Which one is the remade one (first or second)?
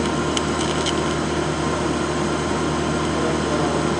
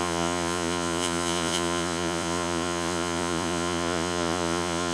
second